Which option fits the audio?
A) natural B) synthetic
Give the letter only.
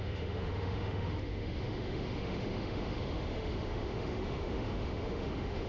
B